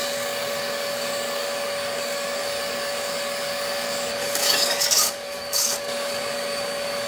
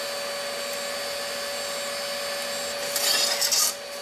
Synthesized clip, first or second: first